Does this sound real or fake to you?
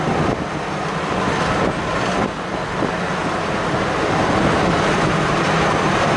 real